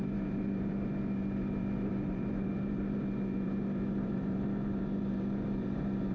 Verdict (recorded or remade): remade